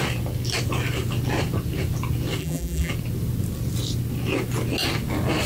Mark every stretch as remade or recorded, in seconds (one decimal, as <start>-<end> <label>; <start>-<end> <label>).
0.0-2.4 recorded; 2.4-2.9 remade; 2.9-5.5 recorded